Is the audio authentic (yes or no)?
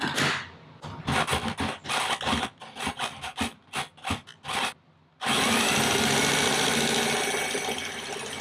yes